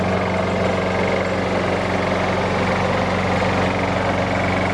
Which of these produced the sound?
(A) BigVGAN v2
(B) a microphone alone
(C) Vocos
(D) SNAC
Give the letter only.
B